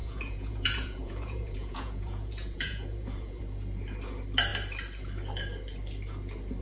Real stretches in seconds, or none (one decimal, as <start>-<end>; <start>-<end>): 3.4-6.6